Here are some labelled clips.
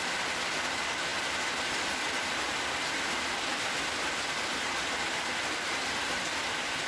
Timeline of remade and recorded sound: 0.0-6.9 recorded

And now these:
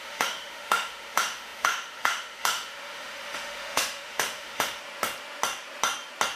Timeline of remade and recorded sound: 0.0-4.8 remade; 4.8-6.4 recorded